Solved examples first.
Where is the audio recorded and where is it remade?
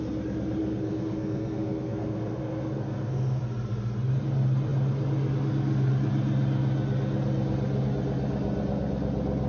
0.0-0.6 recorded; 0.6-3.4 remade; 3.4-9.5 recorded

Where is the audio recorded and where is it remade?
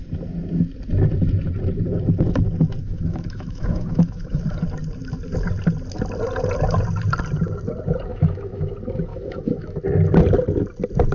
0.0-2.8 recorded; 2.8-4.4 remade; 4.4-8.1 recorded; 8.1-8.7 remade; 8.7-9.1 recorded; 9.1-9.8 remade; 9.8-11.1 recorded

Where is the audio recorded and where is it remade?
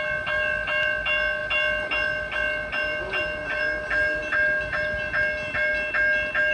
0.0-6.5 recorded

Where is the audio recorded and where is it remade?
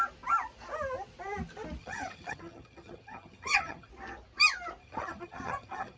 0.0-1.8 recorded; 1.8-3.9 remade; 3.9-4.8 recorded; 4.8-6.0 remade